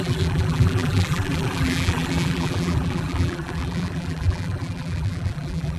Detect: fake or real fake